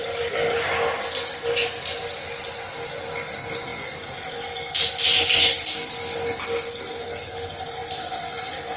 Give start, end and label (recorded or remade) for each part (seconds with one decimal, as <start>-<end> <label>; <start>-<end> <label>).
0.0-8.8 recorded